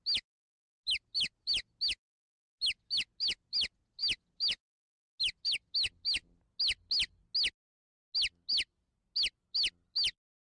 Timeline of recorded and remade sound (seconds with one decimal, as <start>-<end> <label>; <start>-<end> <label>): 0.0-10.5 recorded